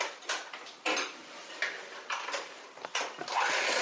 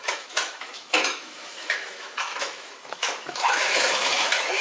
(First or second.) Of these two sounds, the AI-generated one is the second